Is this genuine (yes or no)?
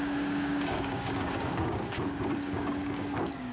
no